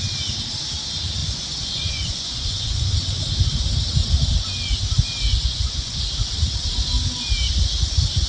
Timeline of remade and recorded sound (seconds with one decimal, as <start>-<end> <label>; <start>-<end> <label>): 0.0-1.2 recorded; 1.2-3.2 remade; 3.2-5.3 recorded; 5.3-6.0 remade; 6.0-8.3 recorded